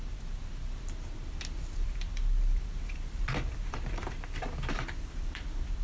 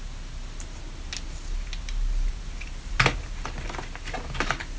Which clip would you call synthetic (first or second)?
first